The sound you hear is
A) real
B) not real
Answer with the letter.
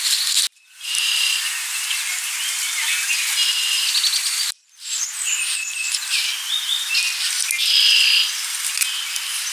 A